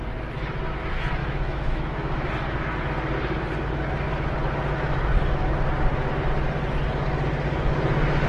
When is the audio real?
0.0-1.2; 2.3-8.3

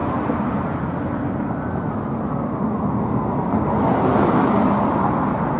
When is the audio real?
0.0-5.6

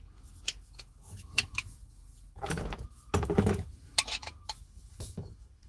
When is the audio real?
none

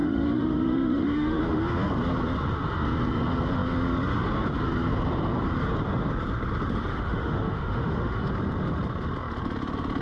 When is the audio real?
1.4-6.9; 8.3-10.0

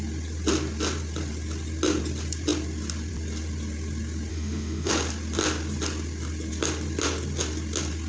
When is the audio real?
0.0-4.3; 4.9-8.1